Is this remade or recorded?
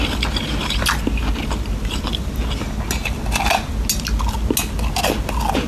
recorded